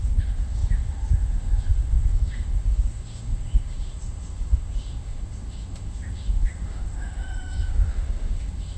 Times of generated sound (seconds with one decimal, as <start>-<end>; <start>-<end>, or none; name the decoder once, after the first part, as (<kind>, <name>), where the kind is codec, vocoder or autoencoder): 0.0-8.8 (autoencoder, DAC-VAE)